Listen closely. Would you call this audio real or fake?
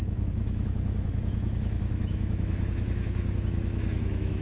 fake